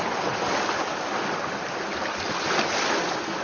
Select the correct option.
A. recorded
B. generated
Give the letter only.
A